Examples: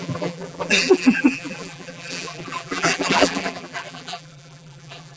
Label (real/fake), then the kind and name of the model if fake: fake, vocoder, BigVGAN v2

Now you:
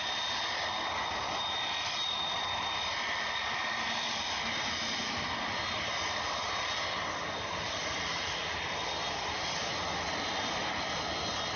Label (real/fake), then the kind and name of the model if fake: real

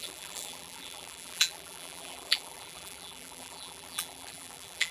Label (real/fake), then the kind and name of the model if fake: fake, vocoder, BigVGAN v2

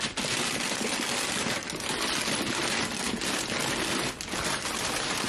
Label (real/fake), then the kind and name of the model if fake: fake, vocoder, BigVGAN v2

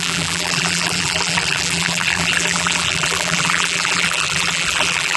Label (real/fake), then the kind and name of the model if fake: fake, vocoder, BigVGAN v2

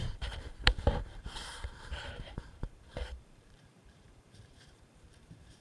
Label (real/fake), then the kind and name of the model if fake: fake, vocoder, BigVGAN v2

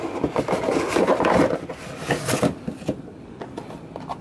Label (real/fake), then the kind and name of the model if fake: real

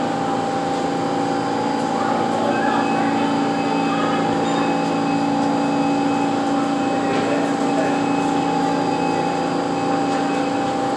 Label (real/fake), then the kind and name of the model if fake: real